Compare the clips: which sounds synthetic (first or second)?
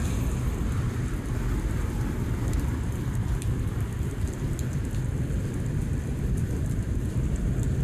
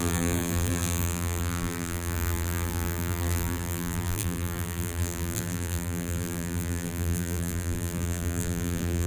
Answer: second